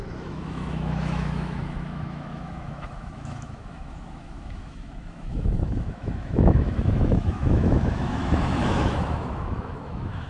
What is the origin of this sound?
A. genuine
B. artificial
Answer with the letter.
B